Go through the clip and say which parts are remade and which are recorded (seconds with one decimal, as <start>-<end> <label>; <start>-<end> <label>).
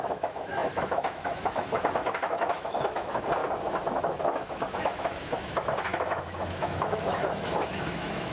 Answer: 0.0-3.4 remade; 3.4-4.0 recorded; 4.0-8.3 remade